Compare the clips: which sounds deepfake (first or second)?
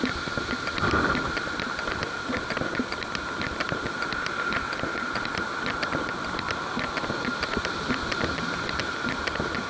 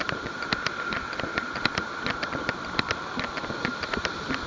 second